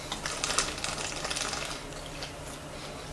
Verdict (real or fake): real